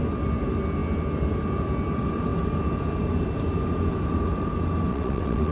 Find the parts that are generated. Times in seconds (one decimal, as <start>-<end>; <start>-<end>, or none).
4.9-5.5